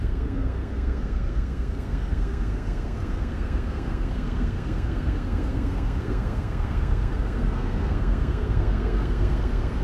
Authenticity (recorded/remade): remade